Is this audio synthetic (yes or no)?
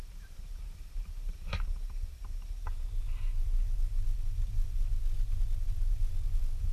no